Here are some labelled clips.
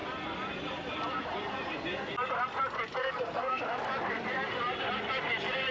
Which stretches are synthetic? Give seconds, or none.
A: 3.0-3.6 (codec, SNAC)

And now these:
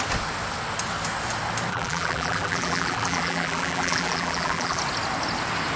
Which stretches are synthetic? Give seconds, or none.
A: 1.7-4.8 (vocoder, BigVGAN v2)

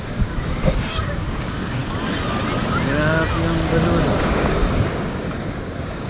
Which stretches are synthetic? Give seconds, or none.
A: 0.0-1.8 (codec, DAC); 4.1-6.1

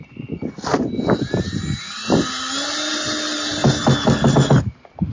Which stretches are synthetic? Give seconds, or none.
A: none

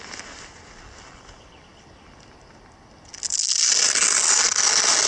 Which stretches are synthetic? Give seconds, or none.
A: none

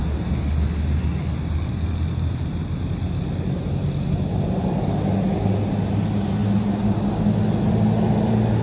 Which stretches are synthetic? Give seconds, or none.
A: none

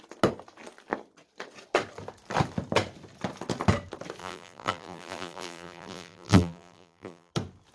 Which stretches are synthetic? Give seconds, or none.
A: 4.2-7.3 (vocoder, BigVGAN v2)